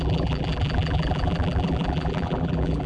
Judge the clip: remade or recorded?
remade